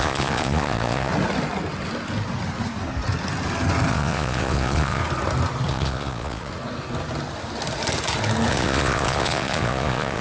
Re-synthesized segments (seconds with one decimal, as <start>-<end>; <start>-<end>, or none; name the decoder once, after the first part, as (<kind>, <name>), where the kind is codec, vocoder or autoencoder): 0.0-1.1 (vocoder, Vocos); 3.9-5.0; 5.7-6.5; 8.5-10.2